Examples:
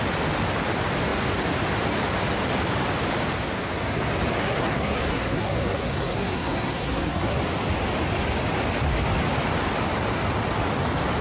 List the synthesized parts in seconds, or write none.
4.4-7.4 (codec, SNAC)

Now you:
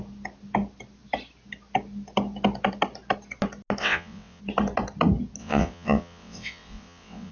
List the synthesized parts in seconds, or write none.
3.8-4.4 (vocoder, WaveNeXt); 5.4-7.3

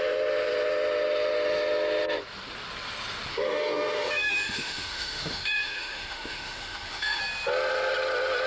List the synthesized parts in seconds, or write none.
3.3-7.2 (autoencoder, DAC-VAE)

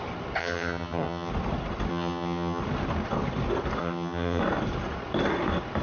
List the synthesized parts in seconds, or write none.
0.4-1.3 (vocoder, HiFi-GAN); 1.9-2.6; 3.8-4.4

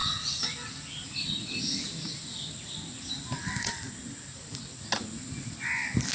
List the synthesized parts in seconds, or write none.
none

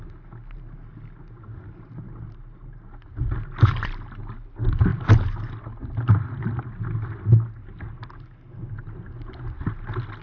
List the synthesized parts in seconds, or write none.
none

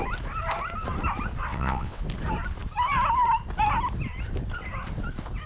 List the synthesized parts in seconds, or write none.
1.5-2.0 (vocoder, WaveNeXt)

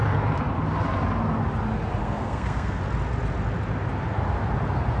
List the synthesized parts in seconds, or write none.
2.0-2.8 (codec, SNAC)